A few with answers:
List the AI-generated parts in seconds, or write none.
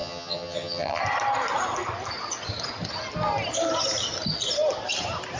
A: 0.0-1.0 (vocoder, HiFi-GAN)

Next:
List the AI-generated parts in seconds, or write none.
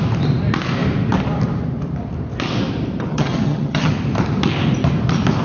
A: 3.1-3.9 (vocoder, HiFi-GAN)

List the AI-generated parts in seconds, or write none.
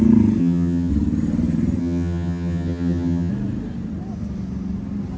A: 0.4-0.9 (vocoder, HiFi-GAN); 1.8-3.3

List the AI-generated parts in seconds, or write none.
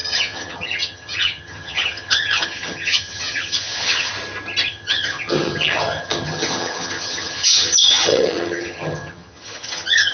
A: 0.0-4.1 (vocoder, HiFi-GAN); 4.7-10.1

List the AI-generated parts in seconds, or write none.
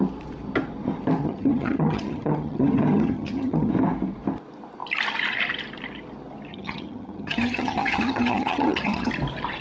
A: 1.2-3.7 (vocoder, HiFi-GAN); 6.5-9.1